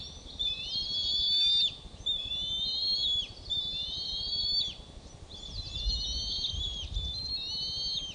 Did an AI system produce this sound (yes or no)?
no